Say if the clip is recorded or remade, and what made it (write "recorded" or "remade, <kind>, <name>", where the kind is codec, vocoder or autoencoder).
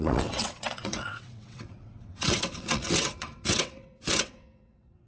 remade, vocoder, WaveNeXt